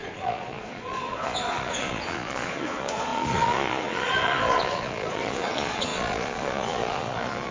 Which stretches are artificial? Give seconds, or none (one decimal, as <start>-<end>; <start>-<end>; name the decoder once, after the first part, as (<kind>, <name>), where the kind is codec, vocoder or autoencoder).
0.0-7.5 (vocoder, Vocos)